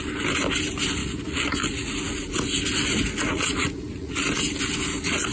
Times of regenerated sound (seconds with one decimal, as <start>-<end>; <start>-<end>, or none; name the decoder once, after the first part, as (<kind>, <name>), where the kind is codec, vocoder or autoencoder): 1.0-1.9 (vocoder, Vocos); 3.2-4.2